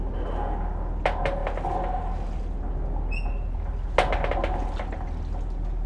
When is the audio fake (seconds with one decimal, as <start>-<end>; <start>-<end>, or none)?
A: none